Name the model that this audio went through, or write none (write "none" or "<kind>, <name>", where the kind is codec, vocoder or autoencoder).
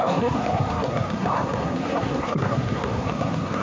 codec, SNAC